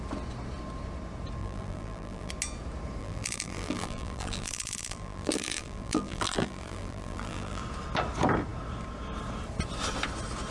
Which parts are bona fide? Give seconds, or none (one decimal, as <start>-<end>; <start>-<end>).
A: 0.0-1.4; 2.3-3.0; 7.6-10.5